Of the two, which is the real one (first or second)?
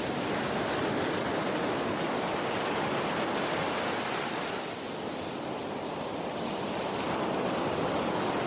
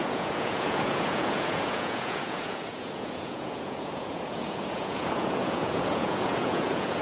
first